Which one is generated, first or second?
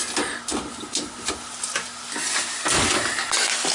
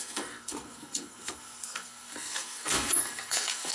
second